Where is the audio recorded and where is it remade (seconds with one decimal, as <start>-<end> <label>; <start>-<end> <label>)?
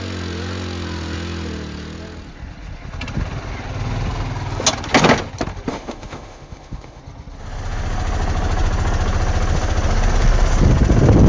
0.0-5.7 recorded; 5.7-7.0 remade; 7.0-11.3 recorded